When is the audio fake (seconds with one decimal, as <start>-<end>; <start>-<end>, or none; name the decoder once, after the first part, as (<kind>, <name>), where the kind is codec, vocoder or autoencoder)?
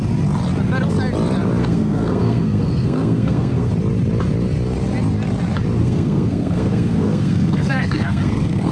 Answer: 1.6-3.7 (codec, SNAC); 5.8-8.7